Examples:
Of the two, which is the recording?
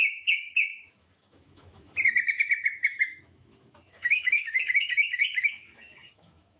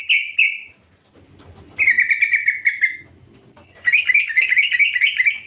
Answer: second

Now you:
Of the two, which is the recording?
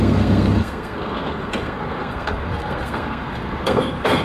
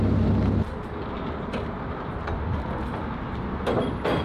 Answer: second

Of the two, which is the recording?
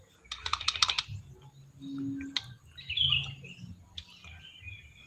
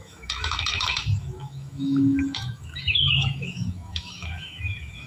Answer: first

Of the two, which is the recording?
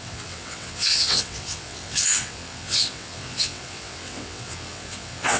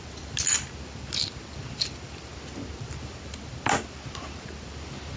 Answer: second